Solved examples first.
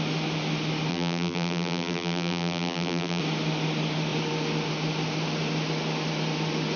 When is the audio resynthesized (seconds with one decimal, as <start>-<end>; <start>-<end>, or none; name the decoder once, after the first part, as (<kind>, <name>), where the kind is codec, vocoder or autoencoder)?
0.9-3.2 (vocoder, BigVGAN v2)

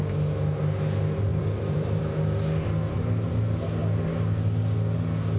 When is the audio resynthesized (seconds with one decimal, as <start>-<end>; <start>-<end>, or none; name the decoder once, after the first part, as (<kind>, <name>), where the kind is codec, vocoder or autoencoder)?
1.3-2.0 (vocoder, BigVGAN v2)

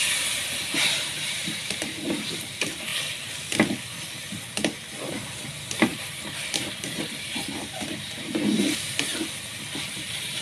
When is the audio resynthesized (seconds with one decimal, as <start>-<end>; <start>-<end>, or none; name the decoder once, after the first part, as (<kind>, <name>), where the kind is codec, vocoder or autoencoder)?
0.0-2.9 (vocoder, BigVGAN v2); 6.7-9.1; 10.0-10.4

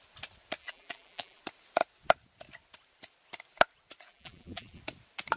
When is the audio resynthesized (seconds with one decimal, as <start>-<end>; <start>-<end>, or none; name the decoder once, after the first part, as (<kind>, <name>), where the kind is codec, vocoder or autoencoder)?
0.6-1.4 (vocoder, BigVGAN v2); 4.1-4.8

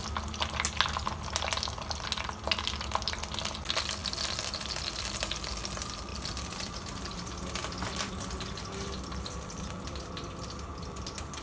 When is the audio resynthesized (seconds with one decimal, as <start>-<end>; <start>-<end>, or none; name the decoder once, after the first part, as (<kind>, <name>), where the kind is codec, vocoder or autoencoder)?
6.1-9.7 (vocoder, BigVGAN v2)